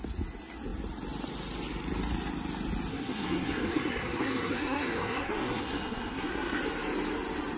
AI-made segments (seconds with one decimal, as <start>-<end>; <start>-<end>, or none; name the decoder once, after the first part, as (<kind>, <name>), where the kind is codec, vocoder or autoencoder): 2.9-6.6 (codec, SNAC)

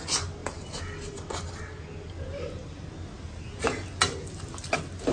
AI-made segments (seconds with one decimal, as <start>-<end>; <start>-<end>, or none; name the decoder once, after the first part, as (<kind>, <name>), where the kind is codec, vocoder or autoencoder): none

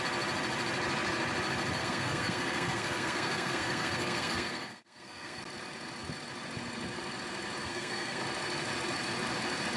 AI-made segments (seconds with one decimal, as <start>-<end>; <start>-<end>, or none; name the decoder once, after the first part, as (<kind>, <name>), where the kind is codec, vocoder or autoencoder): 1.8-5.4 (codec, SNAC); 7.6-8.2

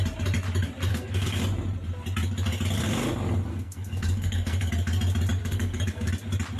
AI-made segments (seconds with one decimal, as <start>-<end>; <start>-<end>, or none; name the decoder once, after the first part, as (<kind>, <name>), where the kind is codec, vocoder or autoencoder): 0.9-1.4 (codec, SNAC); 3.5-4.7; 5.4-6.1